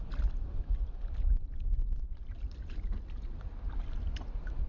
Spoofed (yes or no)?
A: no